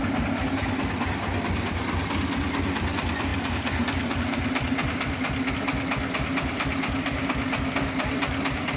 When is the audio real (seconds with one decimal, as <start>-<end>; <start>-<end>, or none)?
0.0-8.8